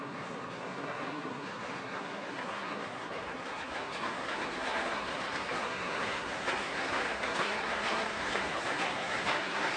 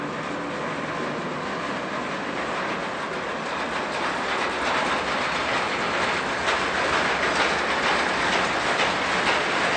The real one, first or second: second